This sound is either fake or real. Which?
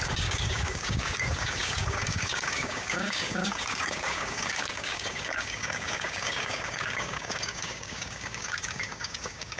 fake